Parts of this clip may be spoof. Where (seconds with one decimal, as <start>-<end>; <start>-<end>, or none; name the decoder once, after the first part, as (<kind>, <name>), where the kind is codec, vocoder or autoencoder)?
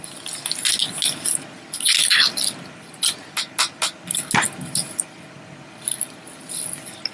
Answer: none